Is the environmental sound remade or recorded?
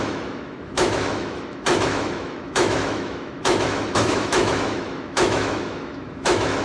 remade